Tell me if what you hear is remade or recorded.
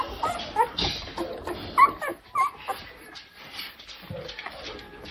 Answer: recorded